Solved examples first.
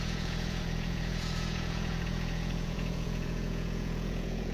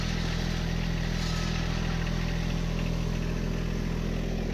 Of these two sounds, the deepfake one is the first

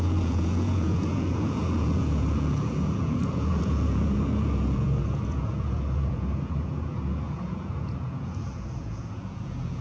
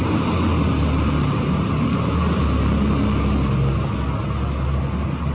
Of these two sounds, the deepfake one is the first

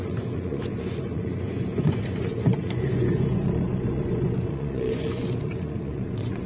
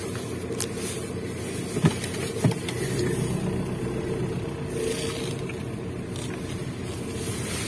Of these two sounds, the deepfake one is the first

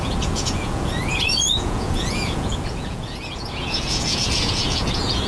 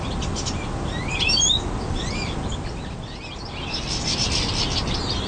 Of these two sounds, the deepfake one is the first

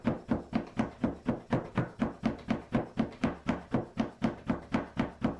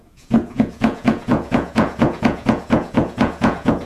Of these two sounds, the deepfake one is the second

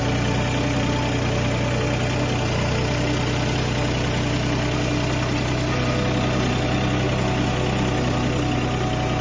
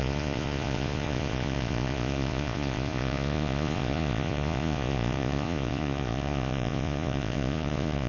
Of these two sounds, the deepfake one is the second